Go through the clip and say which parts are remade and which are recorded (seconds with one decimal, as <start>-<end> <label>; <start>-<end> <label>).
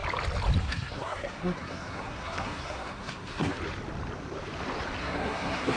0.0-0.6 recorded; 0.6-3.6 remade; 3.6-5.0 recorded; 5.0-5.8 remade